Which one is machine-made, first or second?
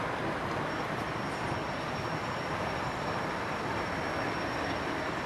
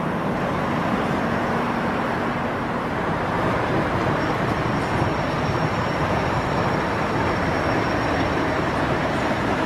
second